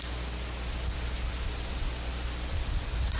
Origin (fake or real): real